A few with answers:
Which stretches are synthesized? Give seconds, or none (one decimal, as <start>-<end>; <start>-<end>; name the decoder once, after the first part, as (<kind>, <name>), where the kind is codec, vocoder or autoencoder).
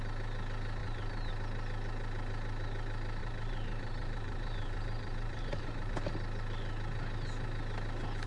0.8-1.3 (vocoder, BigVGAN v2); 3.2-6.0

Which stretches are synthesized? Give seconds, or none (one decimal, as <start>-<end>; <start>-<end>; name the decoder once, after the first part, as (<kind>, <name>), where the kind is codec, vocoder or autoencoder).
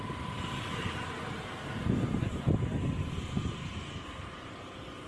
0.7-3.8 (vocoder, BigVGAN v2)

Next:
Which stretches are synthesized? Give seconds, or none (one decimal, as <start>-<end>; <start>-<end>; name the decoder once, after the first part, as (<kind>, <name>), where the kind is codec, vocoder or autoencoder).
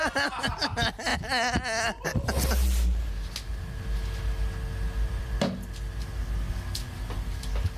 none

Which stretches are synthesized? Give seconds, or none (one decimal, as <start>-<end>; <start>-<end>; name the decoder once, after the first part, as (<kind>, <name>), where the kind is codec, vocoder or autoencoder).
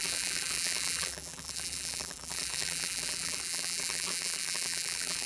0.0-5.3 (vocoder, BigVGAN v2)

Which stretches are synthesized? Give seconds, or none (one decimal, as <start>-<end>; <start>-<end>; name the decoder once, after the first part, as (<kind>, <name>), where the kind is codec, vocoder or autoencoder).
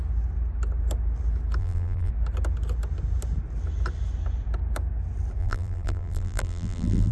1.6-2.1 (vocoder, BigVGAN v2); 5.4-7.1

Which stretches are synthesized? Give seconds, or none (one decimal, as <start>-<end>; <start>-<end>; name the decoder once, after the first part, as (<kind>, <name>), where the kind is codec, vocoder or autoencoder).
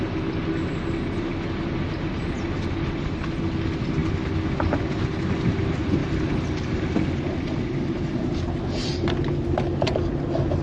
none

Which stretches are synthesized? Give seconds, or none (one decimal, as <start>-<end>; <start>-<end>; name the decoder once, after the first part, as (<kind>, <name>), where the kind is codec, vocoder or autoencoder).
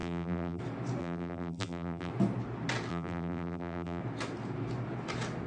0.0-0.6 (vocoder, BigVGAN v2); 1.0-2.1; 2.9-4.0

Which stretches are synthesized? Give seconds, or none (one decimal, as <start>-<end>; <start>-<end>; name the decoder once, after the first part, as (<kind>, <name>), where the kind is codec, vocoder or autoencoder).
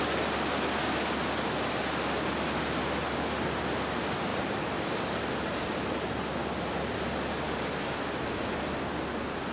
4.3-6.1 (vocoder, BigVGAN v2)